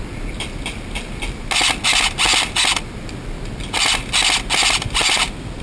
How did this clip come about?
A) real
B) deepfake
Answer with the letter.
A